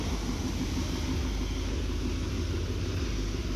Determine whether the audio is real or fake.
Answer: real